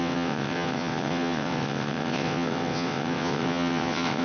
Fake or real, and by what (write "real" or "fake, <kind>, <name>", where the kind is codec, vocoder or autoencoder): fake, vocoder, WaveNeXt